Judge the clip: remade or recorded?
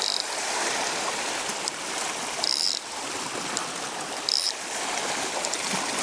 remade